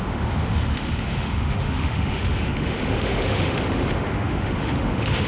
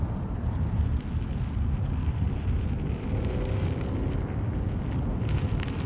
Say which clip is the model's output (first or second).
first